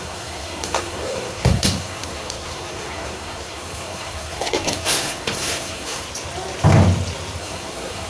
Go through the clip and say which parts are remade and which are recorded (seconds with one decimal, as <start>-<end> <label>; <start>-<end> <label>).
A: 0.0-6.1 remade; 6.1-7.4 recorded; 7.4-8.1 remade